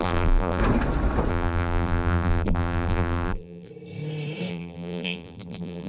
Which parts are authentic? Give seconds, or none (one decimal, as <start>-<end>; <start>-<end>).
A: 0.6-1.3; 3.7-4.5